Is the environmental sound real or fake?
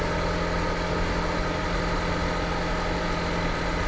real